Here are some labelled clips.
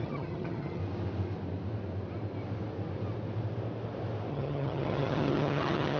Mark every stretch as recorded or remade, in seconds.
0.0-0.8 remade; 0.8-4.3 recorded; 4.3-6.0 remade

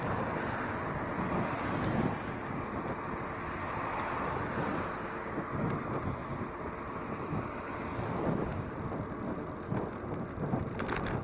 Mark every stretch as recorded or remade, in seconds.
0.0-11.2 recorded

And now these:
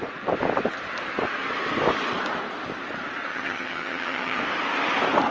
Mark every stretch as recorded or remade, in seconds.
0.0-3.3 recorded; 3.3-4.4 remade; 4.4-5.3 recorded

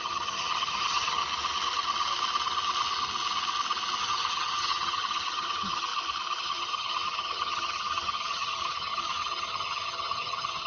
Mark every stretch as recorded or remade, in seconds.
0.0-1.2 remade; 1.2-4.0 recorded; 4.0-5.9 remade; 5.9-6.4 recorded; 6.4-10.7 remade

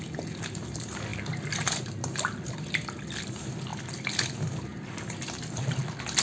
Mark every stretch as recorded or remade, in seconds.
0.0-6.2 recorded